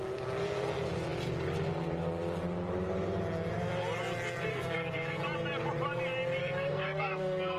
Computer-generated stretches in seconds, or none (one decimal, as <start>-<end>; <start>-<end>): 4.5-5.2; 6.4-7.6